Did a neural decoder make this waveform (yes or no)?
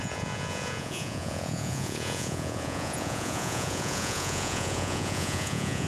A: yes